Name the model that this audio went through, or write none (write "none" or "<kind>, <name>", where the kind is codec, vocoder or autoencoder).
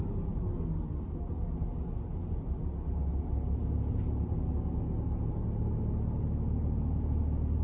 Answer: none